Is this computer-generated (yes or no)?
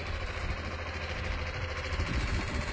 no